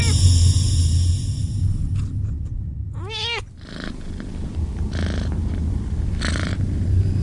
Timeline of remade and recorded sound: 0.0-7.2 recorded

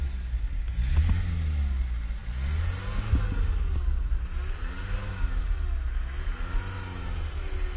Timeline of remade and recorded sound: 0.0-7.8 recorded

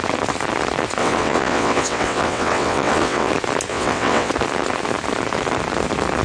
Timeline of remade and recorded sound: 0.0-1.0 recorded; 1.0-3.3 remade; 3.3-3.7 recorded; 3.7-4.3 remade; 4.3-6.2 recorded

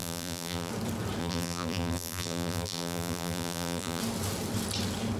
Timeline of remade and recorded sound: 0.0-0.7 remade; 0.7-1.2 recorded; 1.2-4.0 remade; 4.0-5.2 recorded

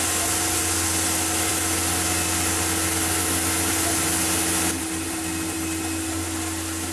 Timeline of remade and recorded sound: 0.0-6.9 recorded

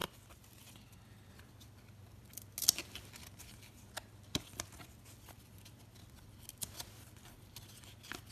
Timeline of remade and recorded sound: 0.0-8.3 recorded